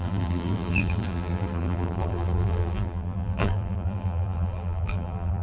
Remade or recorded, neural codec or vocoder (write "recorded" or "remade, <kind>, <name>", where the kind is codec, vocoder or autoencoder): remade, vocoder, BigVGAN v2